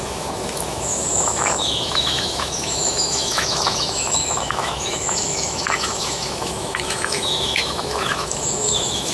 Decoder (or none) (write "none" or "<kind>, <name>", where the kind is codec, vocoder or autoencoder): autoencoder, DAC-VAE